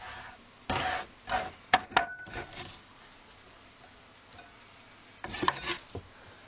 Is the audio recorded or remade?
recorded